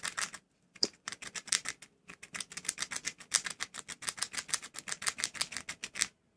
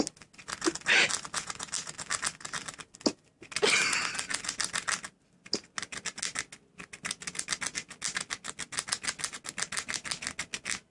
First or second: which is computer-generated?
first